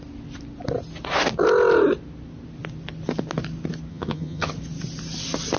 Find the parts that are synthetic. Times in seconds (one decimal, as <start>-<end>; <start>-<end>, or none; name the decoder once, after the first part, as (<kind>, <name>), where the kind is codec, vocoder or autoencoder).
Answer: 3.9-4.5 (vocoder, HiFi-GAN)